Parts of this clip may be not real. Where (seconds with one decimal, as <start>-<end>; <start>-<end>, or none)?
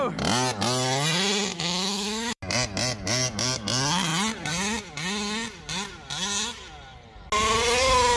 1.5-2.4